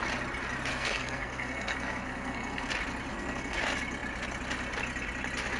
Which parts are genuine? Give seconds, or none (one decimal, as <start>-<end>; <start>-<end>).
0.0-0.7; 2.7-3.1; 3.6-5.6